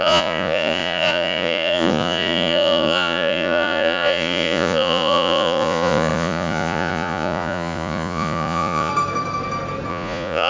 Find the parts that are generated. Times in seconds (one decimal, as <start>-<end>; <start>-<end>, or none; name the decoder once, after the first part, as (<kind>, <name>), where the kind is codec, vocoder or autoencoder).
0.0-8.9 (vocoder, Vocos); 9.9-10.5